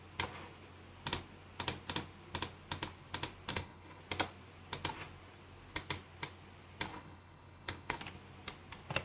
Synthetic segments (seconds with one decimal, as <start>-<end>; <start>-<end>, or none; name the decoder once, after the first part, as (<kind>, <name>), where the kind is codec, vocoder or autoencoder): 3.5-4.0 (codec, HILCodec); 6.9-8.0